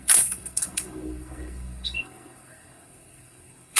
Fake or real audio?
fake